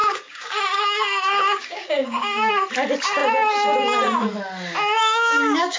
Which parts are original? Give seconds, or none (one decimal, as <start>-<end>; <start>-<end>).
2.5-5.0